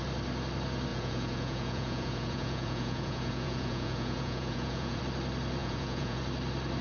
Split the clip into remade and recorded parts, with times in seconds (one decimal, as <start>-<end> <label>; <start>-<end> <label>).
0.0-0.9 recorded; 0.9-5.0 remade; 5.0-5.6 recorded; 5.6-6.2 remade; 6.2-6.8 recorded